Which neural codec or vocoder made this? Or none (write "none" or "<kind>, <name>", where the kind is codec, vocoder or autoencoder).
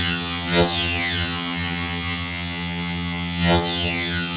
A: vocoder, HiFi-GAN